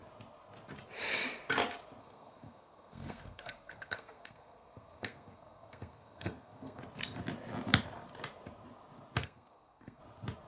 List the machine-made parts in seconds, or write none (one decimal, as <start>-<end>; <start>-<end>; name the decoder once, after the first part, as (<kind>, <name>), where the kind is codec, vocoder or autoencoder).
2.0-6.8 (codec, SNAC); 9.2-10.0